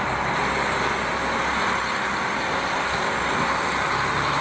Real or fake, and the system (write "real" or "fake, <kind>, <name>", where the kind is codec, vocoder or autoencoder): real